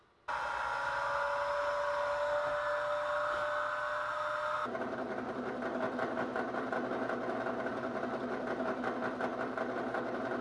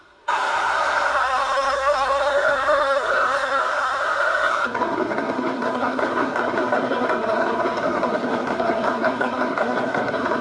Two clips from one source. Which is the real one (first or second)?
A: first